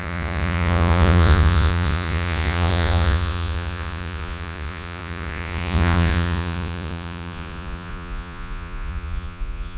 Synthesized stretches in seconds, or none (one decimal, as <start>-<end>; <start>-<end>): 0.0-9.8